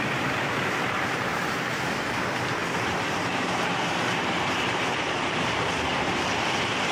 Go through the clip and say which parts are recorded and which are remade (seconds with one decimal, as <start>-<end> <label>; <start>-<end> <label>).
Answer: 0.0-6.9 remade

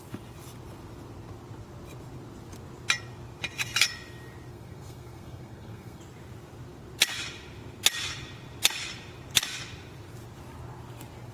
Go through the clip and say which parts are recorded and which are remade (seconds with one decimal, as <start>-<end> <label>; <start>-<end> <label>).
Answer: 0.0-4.5 recorded; 4.5-6.0 remade; 6.0-11.3 recorded